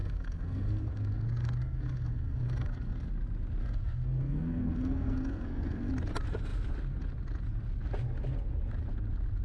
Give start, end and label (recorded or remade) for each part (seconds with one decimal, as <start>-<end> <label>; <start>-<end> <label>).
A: 0.0-3.1 remade; 3.1-3.6 recorded; 3.6-5.9 remade; 5.9-9.4 recorded